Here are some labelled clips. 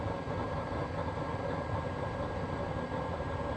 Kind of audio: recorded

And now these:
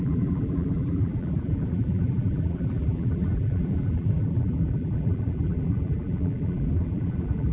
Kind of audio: remade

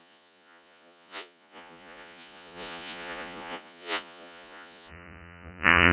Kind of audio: remade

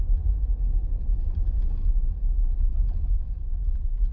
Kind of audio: remade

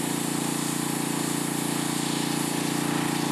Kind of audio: recorded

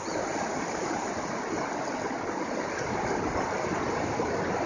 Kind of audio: recorded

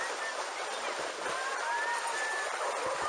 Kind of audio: recorded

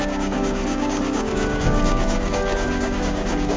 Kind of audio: remade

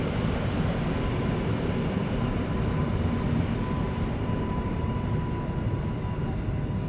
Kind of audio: recorded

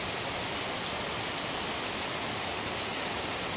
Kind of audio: recorded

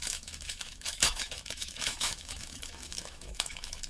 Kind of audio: remade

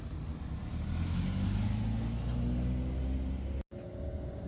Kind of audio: recorded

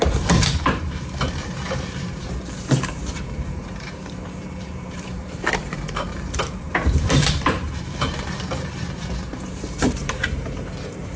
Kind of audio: remade